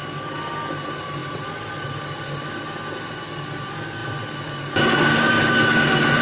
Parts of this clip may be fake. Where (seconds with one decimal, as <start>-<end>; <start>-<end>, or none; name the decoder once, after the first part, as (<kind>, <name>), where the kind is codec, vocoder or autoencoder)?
none